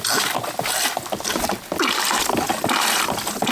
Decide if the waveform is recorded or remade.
recorded